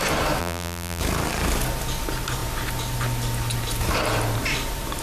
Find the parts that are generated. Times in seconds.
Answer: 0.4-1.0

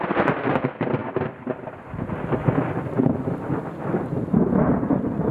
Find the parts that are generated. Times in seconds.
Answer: none

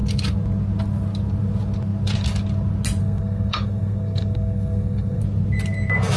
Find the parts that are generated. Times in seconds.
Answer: 3.0-5.2

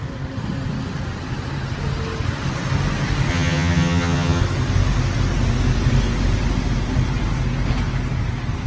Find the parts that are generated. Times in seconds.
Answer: 3.3-4.4